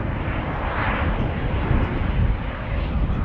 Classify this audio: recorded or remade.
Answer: recorded